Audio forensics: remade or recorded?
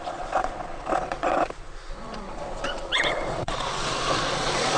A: remade